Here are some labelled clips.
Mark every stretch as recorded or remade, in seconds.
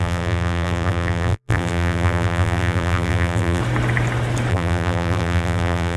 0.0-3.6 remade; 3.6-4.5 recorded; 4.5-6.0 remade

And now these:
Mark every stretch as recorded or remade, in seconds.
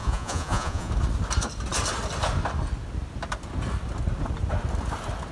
0.0-0.9 remade; 0.9-5.3 recorded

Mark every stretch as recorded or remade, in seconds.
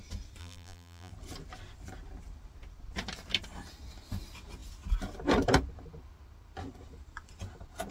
0.0-0.4 recorded; 0.4-1.1 remade; 1.1-7.9 recorded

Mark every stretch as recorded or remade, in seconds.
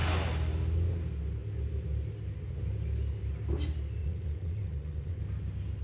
0.0-4.0 recorded; 4.0-5.2 remade; 5.2-5.8 recorded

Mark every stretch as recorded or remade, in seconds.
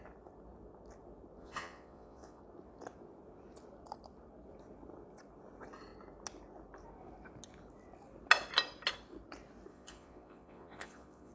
0.0-1.4 recorded; 1.4-2.4 remade; 2.4-9.7 recorded; 9.7-11.3 remade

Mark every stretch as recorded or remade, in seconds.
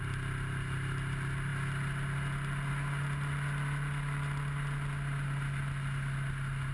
0.0-6.7 recorded